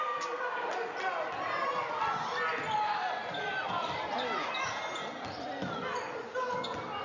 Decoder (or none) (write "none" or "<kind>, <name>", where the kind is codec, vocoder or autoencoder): none